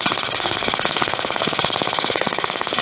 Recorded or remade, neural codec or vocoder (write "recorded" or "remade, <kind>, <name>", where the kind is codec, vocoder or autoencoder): remade, codec, SNAC